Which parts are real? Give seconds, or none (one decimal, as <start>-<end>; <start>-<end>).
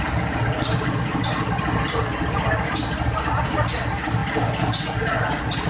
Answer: 0.0-5.7